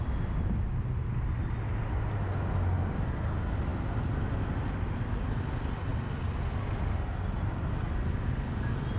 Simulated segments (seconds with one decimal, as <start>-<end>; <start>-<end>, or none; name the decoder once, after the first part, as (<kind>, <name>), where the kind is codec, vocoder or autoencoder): none